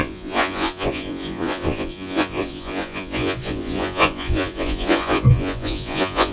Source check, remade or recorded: remade